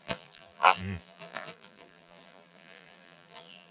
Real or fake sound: fake